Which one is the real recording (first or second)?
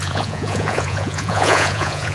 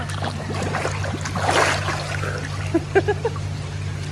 second